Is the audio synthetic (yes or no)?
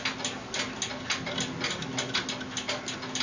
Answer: no